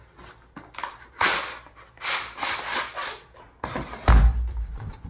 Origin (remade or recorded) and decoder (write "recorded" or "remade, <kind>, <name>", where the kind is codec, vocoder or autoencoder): recorded